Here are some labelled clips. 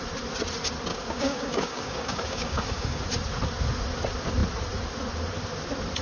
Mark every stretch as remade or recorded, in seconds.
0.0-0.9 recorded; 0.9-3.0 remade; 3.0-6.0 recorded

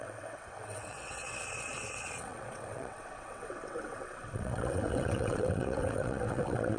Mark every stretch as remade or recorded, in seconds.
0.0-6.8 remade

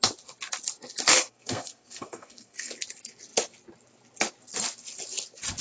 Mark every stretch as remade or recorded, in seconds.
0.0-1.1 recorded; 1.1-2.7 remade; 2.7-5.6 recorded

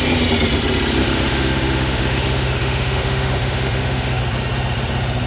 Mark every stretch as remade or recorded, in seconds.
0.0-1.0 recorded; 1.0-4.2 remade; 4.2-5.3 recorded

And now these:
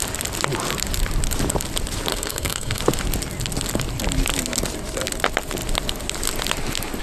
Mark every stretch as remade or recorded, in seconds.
0.0-2.1 recorded; 2.1-2.8 remade; 2.8-7.0 recorded